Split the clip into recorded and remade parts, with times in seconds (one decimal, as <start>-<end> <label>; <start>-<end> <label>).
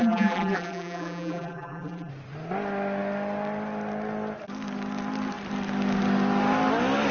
0.0-2.1 remade; 2.1-7.1 recorded